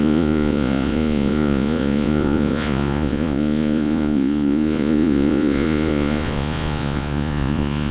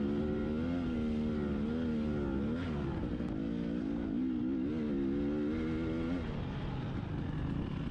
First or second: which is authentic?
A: second